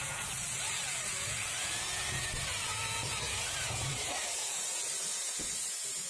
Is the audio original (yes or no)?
no